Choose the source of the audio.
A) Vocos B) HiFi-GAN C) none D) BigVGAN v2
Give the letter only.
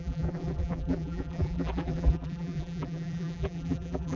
D